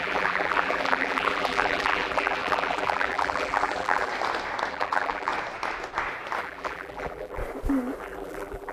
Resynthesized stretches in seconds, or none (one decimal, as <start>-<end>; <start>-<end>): 0.0-4.1; 4.7-5.3; 6.4-7.4; 8.0-8.7